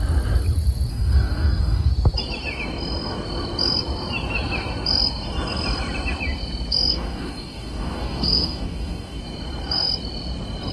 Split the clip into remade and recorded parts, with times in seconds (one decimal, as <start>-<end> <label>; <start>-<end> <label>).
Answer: 0.0-0.9 recorded; 0.9-1.9 remade; 1.9-6.9 recorded; 6.9-9.2 remade; 9.2-10.7 recorded